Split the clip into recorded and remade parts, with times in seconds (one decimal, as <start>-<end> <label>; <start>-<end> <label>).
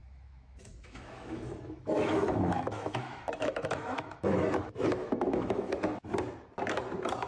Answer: 0.0-4.4 remade; 4.4-5.0 recorded; 5.0-5.7 remade; 5.7-7.3 recorded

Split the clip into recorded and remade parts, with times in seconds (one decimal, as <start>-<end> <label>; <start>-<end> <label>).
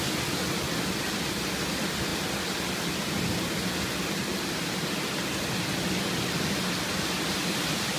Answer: 0.0-8.0 recorded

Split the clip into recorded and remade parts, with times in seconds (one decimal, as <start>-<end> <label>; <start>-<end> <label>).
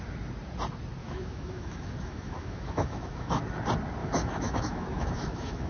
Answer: 0.0-1.0 recorded; 1.0-3.4 remade; 3.4-4.0 recorded; 4.0-5.7 remade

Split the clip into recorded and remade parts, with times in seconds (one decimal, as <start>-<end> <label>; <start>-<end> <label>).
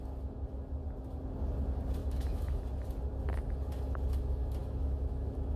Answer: 0.0-2.0 recorded; 2.0-2.6 remade; 2.6-4.6 recorded; 4.6-5.6 remade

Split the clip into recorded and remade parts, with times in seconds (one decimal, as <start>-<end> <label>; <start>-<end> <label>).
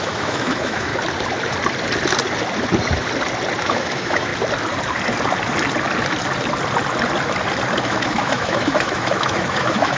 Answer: 0.0-0.9 remade; 0.9-3.6 recorded; 3.6-4.3 remade; 4.3-7.8 recorded; 7.8-10.0 remade